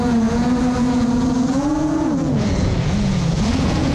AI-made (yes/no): yes